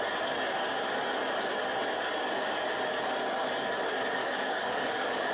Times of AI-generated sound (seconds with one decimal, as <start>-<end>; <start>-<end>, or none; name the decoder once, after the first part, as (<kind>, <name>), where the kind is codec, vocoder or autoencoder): 4.2-5.3 (codec, DAC)